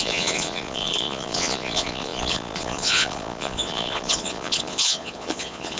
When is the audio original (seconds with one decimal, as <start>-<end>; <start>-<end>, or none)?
none